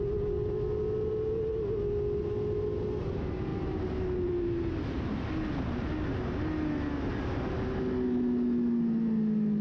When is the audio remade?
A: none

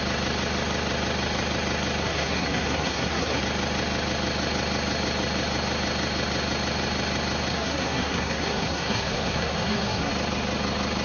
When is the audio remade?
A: 2.0-3.4 (codec, SNAC); 7.5-10.1

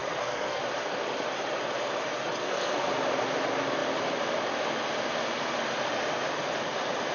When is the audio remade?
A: 0.0-0.6 (codec, SNAC); 2.4-2.9